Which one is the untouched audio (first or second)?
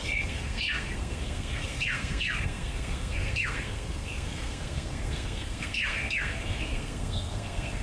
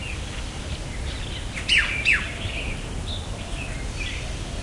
second